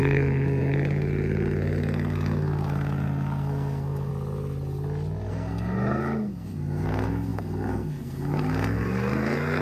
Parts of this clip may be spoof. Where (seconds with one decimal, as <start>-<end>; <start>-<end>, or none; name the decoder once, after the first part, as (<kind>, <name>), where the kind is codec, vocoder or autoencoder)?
0.0-4.1 (codec, SNAC); 5.3-9.6